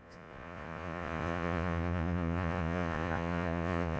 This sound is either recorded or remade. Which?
remade